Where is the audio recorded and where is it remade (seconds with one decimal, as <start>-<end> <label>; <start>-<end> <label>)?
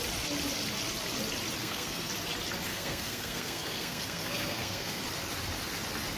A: 0.0-1.6 recorded; 1.6-2.1 remade; 2.1-2.7 recorded; 2.7-5.0 remade; 5.0-6.2 recorded